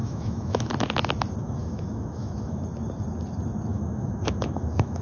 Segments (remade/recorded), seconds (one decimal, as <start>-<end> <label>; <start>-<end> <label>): 0.0-0.7 remade; 0.7-1.4 recorded; 1.4-2.6 remade; 2.6-3.7 recorded; 3.7-5.0 remade